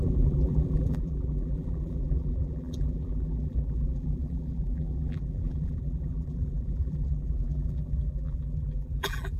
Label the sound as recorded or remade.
remade